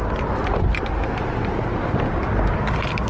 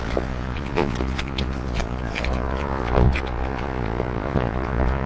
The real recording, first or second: first